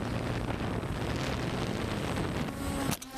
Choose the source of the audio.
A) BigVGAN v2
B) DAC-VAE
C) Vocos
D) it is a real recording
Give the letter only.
D